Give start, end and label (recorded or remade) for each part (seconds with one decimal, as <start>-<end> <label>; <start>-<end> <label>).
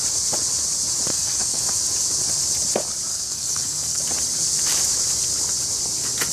0.0-1.1 recorded; 1.1-1.6 remade; 1.6-3.1 recorded; 3.1-4.0 remade; 4.0-6.3 recorded